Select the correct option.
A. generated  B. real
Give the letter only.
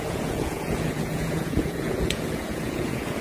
A